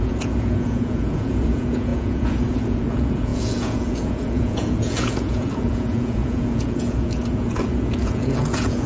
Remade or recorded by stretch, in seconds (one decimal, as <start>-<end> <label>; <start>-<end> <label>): 0.0-8.9 remade